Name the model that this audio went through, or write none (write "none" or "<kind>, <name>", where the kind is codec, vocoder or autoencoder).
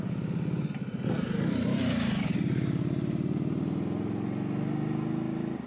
none